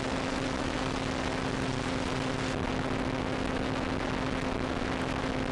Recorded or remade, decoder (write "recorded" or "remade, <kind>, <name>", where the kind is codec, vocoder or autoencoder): recorded